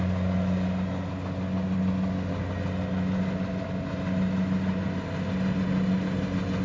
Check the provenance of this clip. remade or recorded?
recorded